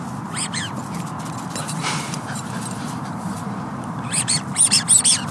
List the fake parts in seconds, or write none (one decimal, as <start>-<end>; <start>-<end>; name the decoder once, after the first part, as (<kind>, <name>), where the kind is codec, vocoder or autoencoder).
1.6-4.7 (vocoder, BigVGAN v2)